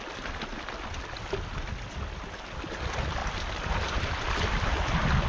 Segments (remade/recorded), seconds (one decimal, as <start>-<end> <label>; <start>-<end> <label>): 0.0-3.2 recorded; 3.2-4.0 remade; 4.0-5.3 recorded